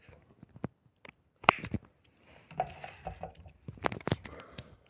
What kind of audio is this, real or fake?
real